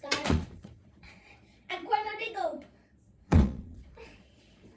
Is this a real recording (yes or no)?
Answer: no